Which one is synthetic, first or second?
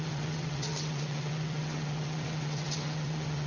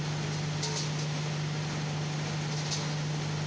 first